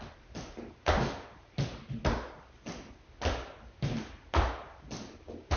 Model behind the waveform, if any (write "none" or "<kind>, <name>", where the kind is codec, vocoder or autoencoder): none